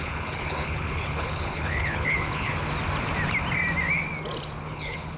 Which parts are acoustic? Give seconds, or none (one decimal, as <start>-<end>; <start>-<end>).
2.5-4.7